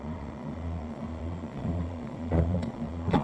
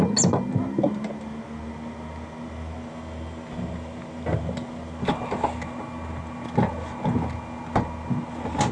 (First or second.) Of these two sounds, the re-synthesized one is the first